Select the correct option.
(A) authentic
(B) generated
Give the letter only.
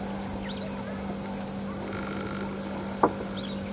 A